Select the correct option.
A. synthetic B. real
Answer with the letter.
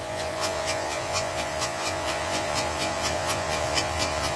A